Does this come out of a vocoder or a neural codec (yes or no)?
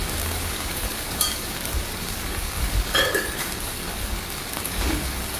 yes